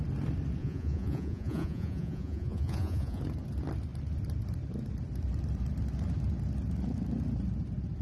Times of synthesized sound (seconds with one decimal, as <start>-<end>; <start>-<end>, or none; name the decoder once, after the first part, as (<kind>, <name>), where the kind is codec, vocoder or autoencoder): 0.6-3.2 (vocoder, Vocos)